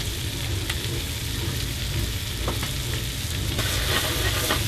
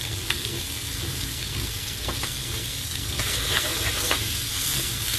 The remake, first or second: second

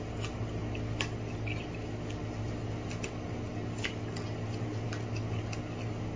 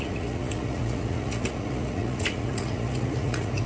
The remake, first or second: second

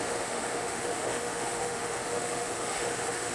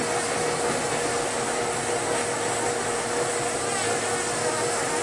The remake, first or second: first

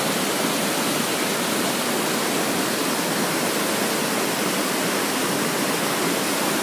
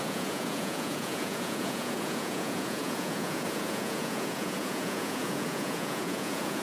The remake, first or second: second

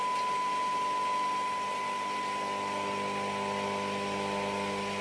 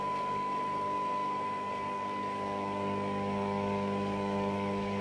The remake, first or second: second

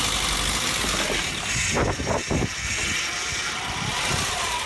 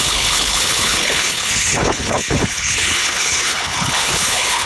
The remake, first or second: second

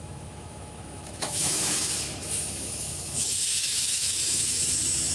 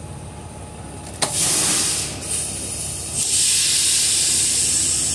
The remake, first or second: first